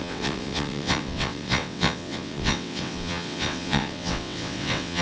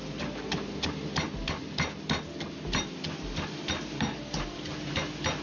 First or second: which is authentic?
second